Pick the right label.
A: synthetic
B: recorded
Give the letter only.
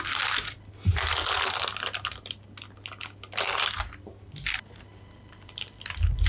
B